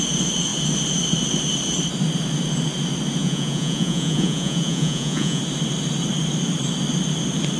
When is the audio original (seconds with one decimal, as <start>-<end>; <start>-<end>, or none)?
0.0-3.2; 5.4-7.6